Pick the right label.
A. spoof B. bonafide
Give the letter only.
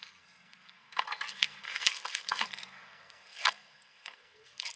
A